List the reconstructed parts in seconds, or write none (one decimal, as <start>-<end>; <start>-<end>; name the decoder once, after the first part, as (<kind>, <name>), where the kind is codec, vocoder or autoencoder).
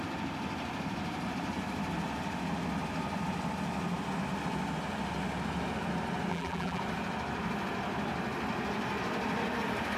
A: 6.3-6.8 (vocoder, BigVGAN v2)